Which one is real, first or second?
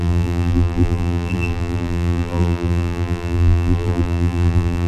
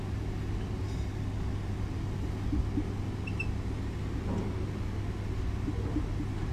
second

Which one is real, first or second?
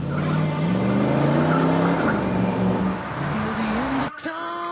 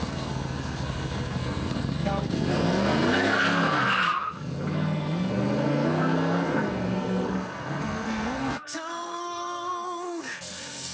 first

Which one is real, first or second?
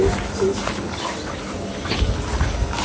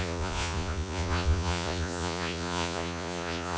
first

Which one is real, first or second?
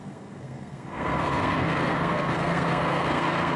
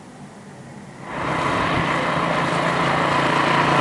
second